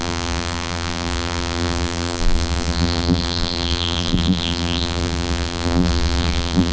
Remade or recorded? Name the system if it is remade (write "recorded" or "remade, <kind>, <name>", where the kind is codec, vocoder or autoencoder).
remade, vocoder, BigVGAN v2